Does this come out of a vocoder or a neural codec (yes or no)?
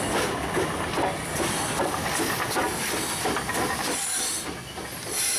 no